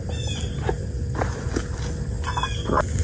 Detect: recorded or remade recorded